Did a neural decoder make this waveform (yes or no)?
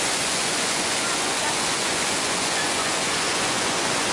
yes